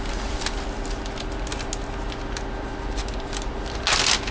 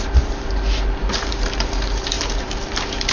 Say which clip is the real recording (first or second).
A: first